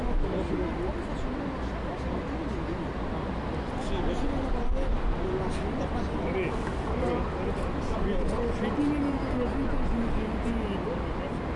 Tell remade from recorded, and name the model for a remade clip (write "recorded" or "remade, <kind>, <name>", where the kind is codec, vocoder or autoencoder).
recorded